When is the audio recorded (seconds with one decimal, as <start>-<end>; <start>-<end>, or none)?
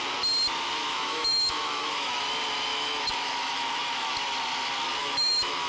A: 0.0-0.8; 2.2-2.7; 4.1-5.0